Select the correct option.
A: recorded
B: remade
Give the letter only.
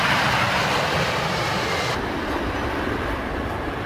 B